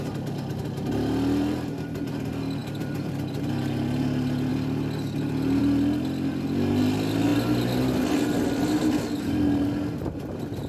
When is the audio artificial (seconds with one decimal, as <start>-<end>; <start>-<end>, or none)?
2.6-3.1